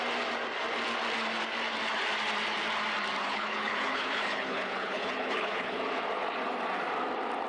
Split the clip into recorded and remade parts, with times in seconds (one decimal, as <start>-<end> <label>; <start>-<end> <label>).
0.0-3.2 recorded; 3.2-5.8 remade; 5.8-7.5 recorded